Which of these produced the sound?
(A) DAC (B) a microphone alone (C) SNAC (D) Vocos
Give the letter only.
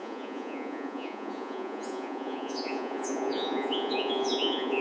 D